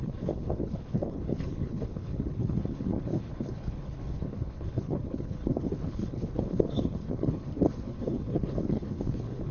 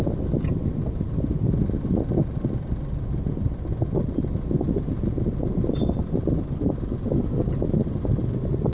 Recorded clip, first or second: second